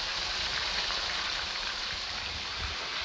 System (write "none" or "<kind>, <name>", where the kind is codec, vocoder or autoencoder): vocoder, BigVGAN v2